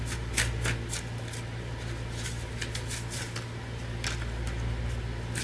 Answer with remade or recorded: recorded